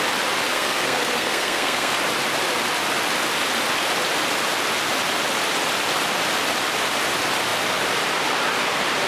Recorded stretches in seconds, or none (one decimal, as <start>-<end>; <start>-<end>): 0.0-0.5; 2.0-9.1